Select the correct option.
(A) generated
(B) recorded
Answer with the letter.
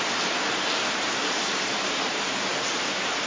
A